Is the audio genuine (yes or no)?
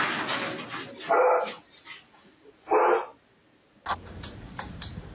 yes